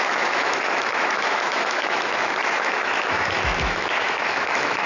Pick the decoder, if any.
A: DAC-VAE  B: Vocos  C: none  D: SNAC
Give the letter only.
A